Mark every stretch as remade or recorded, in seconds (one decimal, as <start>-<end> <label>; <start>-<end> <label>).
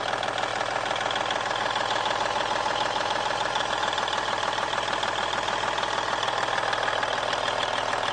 0.0-8.1 recorded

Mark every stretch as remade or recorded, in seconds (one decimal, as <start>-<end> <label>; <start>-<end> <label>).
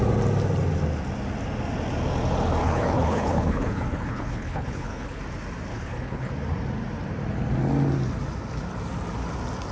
0.0-2.6 recorded; 2.6-5.2 remade; 5.2-5.7 recorded; 5.7-6.3 remade; 6.3-9.7 recorded